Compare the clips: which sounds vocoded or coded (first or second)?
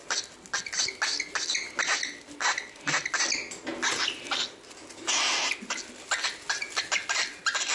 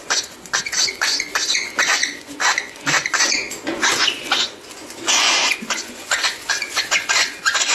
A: second